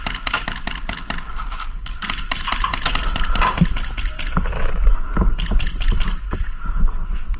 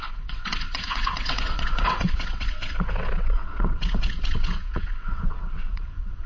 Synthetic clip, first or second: second